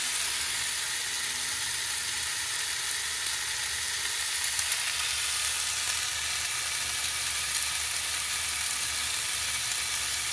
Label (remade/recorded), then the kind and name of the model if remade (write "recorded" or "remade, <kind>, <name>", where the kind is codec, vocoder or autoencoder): recorded